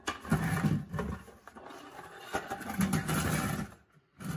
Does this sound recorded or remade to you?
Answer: recorded